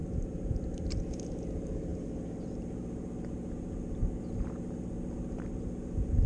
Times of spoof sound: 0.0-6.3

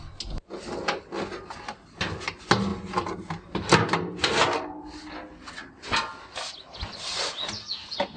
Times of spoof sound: none

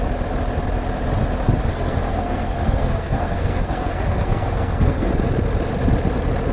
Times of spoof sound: 1.7-5.1

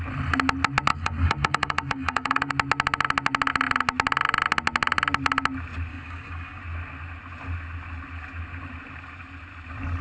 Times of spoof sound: 0.9-2.5; 5.9-6.6

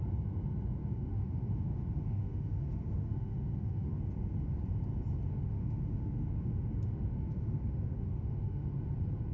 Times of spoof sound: 0.8-4.0; 5.3-8.8

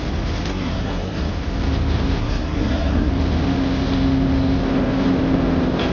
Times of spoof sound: 0.5-1.3; 2.2-3.1